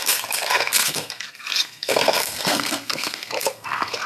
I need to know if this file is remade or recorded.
remade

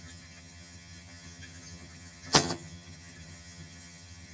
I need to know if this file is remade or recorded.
remade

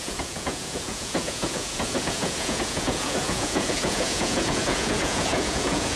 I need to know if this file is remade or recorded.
remade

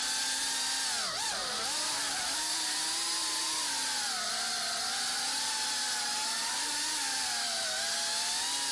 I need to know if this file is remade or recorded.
recorded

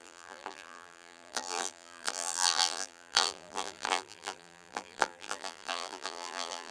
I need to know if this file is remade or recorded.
remade